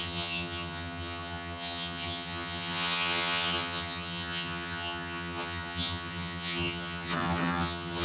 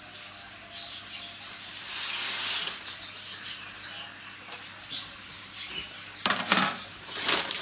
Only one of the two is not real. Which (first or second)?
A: first